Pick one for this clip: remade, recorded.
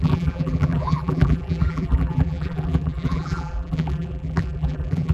remade